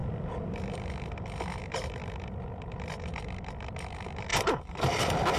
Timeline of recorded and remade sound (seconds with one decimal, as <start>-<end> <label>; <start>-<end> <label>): 0.0-4.3 recorded; 4.3-5.0 remade; 5.0-5.4 recorded